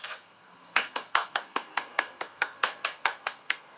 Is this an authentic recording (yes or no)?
no